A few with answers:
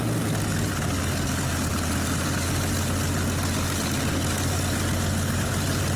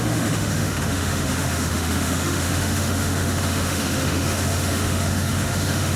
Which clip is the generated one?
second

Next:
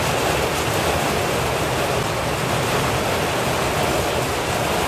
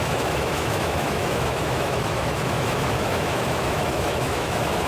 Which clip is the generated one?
second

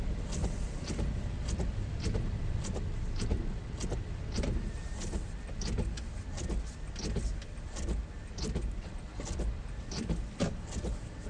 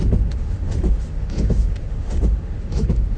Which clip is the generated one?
second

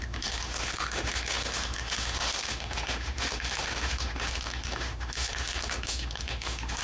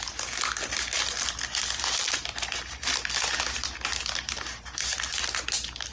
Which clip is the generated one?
first